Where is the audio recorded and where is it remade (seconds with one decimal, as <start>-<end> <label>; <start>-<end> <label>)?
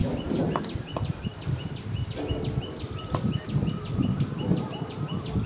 0.0-5.5 recorded